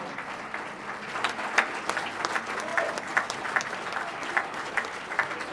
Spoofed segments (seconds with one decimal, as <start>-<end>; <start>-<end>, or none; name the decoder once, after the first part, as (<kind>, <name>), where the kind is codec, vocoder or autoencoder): none